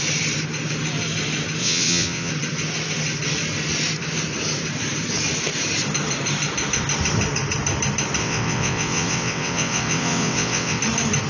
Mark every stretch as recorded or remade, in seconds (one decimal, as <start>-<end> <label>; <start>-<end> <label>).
0.0-1.6 recorded; 1.6-2.3 remade; 2.3-8.2 recorded; 8.2-10.8 remade; 10.8-11.3 recorded